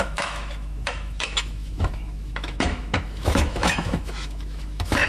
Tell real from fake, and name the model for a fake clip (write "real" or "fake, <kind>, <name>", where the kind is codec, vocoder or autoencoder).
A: fake, autoencoder, DAC-VAE